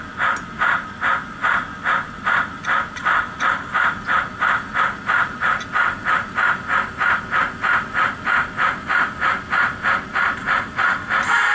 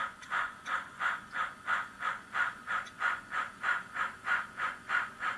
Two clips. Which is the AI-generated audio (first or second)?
second